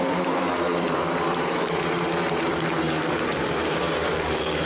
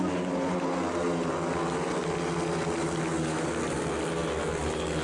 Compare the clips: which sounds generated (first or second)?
first